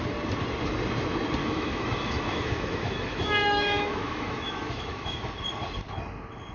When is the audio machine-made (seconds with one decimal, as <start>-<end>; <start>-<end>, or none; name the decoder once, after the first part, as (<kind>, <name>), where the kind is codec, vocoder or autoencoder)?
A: 1.4-5.3 (autoencoder, DAC-VAE)